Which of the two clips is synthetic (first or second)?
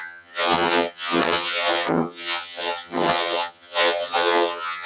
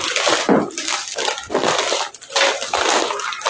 first